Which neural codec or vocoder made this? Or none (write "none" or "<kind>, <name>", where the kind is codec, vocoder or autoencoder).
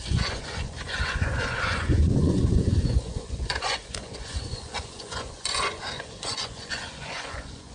vocoder, Vocos